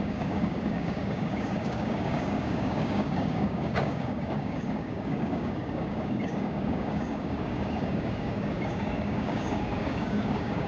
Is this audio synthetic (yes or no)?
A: yes